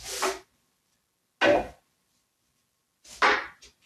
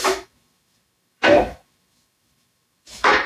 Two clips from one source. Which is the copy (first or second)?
second